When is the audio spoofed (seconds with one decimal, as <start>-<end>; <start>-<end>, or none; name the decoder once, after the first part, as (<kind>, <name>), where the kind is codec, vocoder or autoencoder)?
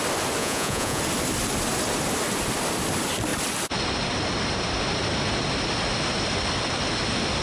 0.4-1.0 (vocoder, Vocos)